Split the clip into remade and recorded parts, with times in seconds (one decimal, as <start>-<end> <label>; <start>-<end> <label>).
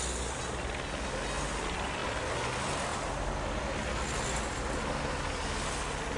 0.0-6.2 recorded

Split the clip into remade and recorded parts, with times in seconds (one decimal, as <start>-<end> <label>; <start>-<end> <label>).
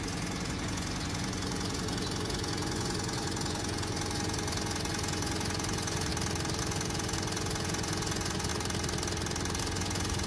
0.0-6.1 remade; 6.1-6.6 recorded; 6.6-8.5 remade; 8.5-9.6 recorded; 9.6-10.3 remade